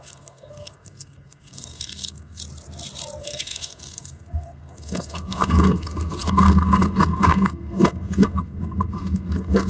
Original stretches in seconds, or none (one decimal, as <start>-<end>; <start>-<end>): 2.4-3.2